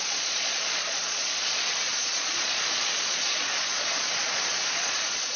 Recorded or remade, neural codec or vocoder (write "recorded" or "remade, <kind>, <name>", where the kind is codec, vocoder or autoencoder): remade, vocoder, Vocos